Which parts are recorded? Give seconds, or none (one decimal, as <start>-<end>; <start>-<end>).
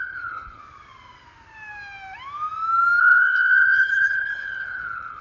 0.6-3.0